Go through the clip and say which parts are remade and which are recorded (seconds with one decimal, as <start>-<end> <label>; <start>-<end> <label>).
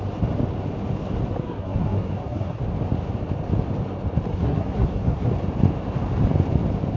0.0-1.3 recorded; 1.3-2.6 remade; 2.6-4.3 recorded; 4.3-5.3 remade; 5.3-7.0 recorded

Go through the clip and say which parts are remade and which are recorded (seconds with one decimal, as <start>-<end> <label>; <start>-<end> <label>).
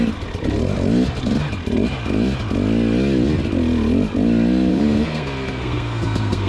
0.0-4.7 recorded; 4.7-6.5 remade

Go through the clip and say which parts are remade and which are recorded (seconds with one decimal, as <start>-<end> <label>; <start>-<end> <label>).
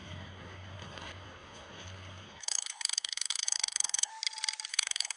0.0-4.1 remade; 4.1-4.7 recorded; 4.7-5.2 remade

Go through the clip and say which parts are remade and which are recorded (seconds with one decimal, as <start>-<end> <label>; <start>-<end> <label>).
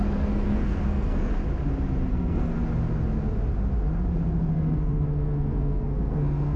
0.0-1.3 remade; 1.3-2.1 recorded; 2.1-2.5 remade; 2.5-4.5 recorded; 4.5-6.6 remade